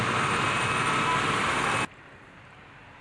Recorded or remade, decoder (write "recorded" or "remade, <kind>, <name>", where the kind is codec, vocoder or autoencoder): recorded